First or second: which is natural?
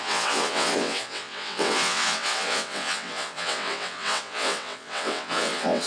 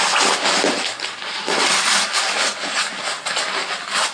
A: second